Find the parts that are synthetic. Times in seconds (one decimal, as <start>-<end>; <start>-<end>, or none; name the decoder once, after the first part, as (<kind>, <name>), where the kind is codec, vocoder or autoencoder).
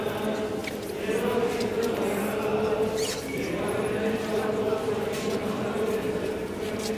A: none